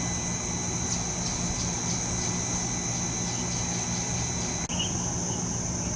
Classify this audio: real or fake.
real